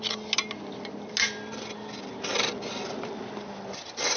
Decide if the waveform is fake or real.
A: real